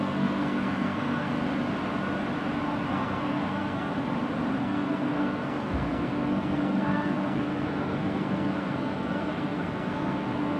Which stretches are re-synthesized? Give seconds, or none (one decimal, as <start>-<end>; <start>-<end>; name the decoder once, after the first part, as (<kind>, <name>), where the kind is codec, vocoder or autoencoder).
0.0-1.4 (codec, SNAC); 2.9-3.9; 4.6-10.6